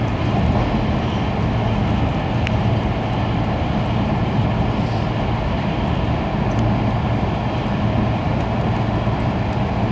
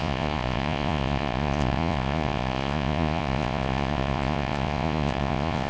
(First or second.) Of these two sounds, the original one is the first